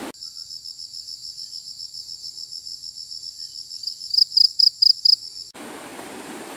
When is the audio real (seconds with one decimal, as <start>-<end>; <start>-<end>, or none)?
0.0-3.8; 4.6-5.9